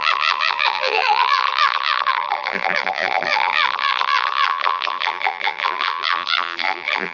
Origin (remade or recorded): remade